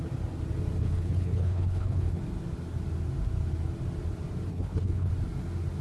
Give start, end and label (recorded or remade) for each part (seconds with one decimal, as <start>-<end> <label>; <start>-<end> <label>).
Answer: 0.0-0.8 recorded; 0.8-2.2 remade; 2.2-4.5 recorded; 4.5-5.1 remade; 5.1-5.8 recorded